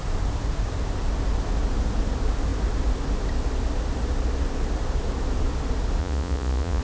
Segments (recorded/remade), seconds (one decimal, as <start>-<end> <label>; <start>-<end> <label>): 0.0-6.0 recorded; 6.0-6.8 remade